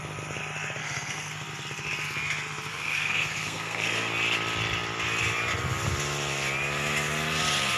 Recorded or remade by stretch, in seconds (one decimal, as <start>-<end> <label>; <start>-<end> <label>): 0.0-0.8 recorded; 0.8-1.3 remade; 1.3-2.7 recorded; 2.7-4.1 remade; 4.1-7.8 recorded